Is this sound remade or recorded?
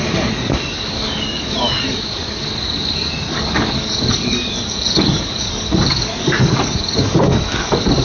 remade